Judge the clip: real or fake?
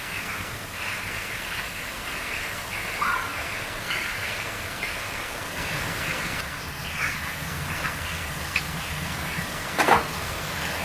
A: fake